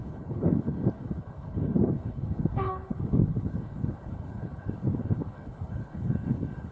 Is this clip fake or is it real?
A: fake